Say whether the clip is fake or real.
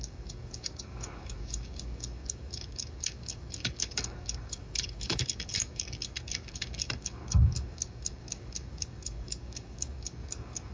fake